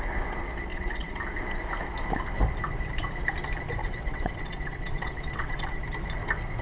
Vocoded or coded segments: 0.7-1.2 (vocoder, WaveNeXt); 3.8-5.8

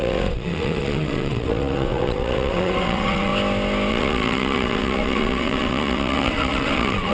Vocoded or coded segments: 0.0-3.3 (vocoder, WaveNeXt); 3.9-7.1